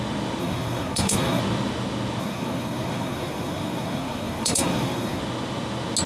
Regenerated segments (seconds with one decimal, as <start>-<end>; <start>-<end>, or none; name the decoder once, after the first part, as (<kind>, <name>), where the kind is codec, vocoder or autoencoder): 0.4-1.4 (codec, SNAC); 2.2-5.2